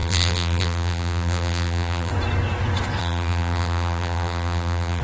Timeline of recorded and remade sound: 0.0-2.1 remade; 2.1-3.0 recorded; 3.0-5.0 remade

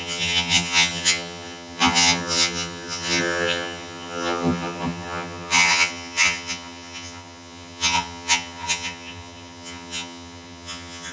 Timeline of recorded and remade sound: 0.0-11.1 remade

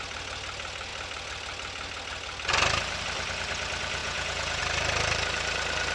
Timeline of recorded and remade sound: 0.0-4.0 recorded; 4.0-4.6 remade; 4.6-5.9 recorded

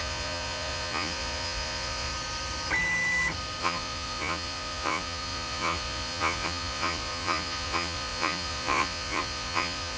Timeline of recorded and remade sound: 0.0-2.1 remade; 2.1-3.6 recorded; 3.6-10.0 remade